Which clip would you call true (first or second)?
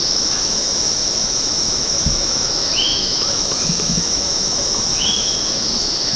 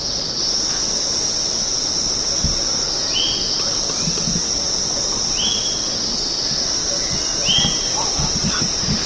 second